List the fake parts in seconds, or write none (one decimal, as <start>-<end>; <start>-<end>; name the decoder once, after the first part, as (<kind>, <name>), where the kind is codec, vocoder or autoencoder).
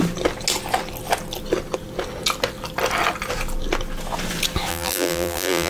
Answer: 4.7-5.7 (vocoder, BigVGAN v2)